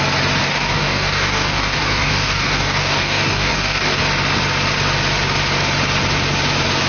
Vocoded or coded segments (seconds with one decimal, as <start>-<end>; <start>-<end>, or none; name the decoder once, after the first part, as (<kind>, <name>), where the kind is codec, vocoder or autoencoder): 0.4-4.0 (codec, DAC)